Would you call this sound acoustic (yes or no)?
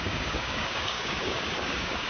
no